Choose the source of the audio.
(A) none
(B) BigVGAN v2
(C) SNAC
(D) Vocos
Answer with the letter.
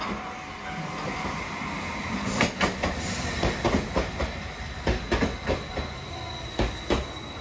A